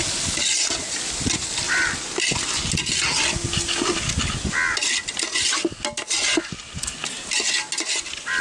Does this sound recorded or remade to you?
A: recorded